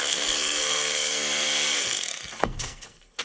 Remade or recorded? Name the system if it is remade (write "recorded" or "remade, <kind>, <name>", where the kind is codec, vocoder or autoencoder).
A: remade, codec, SNAC